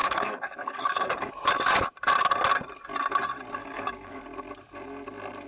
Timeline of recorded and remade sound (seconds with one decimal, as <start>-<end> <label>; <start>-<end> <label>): 0.0-1.3 remade; 1.3-3.6 recorded; 3.6-4.2 remade; 4.2-5.5 recorded